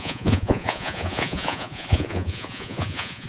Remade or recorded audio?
remade